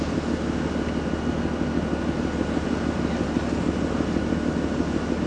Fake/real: real